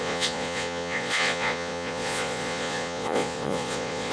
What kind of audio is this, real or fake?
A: fake